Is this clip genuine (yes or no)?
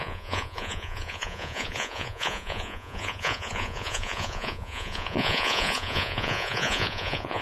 no